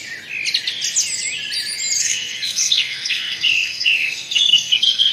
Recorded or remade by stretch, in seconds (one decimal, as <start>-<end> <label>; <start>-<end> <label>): 0.0-2.0 recorded; 2.0-5.1 remade